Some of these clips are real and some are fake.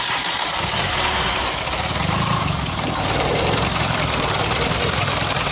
fake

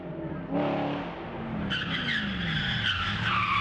real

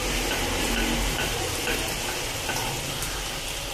real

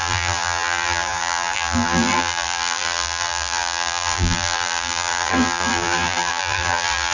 fake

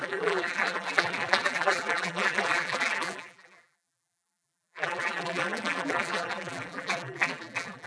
fake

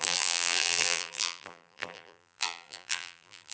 fake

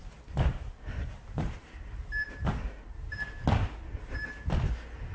real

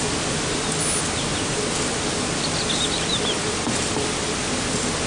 real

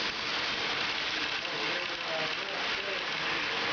real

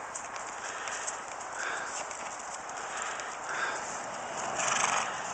fake